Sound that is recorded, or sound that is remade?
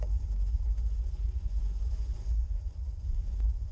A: remade